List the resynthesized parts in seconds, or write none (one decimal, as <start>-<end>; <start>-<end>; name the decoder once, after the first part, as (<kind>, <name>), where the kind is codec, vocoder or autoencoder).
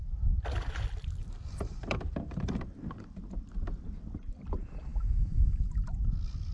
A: 1.2-2.8 (vocoder, BigVGAN v2)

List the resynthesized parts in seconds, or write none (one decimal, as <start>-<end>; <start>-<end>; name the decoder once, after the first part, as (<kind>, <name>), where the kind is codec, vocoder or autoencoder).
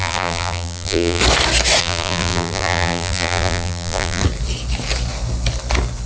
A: 0.0-1.2 (vocoder, BigVGAN v2); 1.8-4.2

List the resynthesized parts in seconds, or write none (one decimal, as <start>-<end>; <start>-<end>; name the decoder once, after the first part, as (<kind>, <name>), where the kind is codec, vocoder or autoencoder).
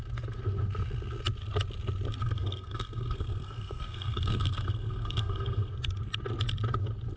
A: 2.2-5.7 (codec, SNAC)